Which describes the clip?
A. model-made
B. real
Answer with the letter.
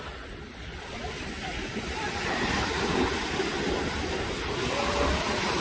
A